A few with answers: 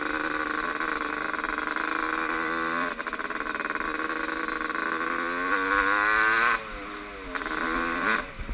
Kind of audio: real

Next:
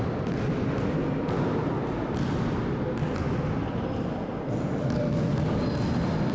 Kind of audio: real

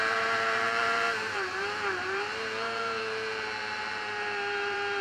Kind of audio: fake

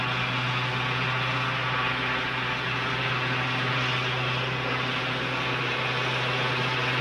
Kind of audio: real